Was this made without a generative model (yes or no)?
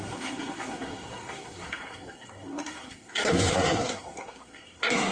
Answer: no